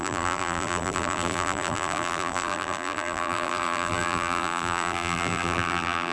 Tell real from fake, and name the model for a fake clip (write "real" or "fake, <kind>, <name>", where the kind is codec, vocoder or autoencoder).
fake, vocoder, BigVGAN v2